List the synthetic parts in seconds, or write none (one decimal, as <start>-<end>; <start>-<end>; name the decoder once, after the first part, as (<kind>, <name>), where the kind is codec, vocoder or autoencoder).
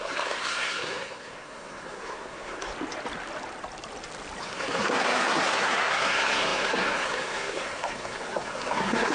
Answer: 0.0-2.7 (codec, SNAC); 4.4-9.1